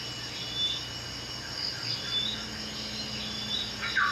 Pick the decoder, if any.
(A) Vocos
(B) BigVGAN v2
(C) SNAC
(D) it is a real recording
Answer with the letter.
D